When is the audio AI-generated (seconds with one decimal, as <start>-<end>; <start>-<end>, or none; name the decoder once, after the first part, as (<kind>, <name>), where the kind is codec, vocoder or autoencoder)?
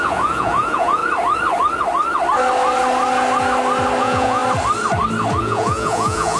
0.0-1.0 (vocoder, Vocos); 4.0-4.4; 5.4-6.4